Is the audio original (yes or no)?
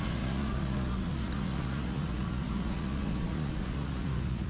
no